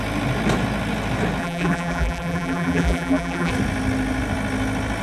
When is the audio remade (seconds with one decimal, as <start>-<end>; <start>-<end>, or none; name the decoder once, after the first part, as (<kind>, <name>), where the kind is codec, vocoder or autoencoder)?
1.4-3.5 (vocoder, BigVGAN v2)